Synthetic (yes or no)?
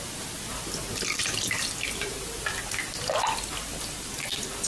no